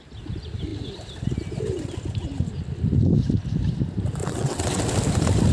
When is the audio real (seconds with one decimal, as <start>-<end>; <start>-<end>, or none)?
0.0-4.2; 4.8-5.5